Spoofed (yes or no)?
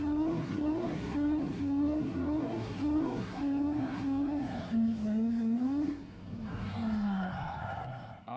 yes